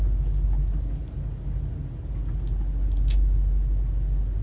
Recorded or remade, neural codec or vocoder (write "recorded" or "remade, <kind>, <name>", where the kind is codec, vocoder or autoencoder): recorded